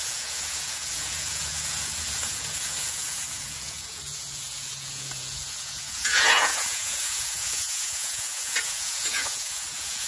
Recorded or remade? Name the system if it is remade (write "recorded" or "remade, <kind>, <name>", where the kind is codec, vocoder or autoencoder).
remade, vocoder, Vocos